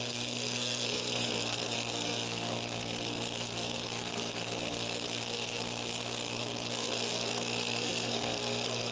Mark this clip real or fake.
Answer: fake